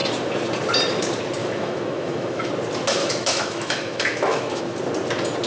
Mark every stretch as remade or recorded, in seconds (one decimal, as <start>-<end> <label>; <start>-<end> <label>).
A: 0.0-1.4 recorded; 1.4-2.5 remade; 2.5-3.0 recorded; 3.0-4.6 remade; 4.6-5.5 recorded